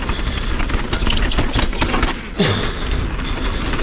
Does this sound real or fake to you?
real